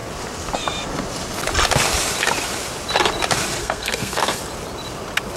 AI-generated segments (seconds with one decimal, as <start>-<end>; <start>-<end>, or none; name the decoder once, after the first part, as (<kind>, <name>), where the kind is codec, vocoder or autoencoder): 3.6-4.4 (codec, SNAC)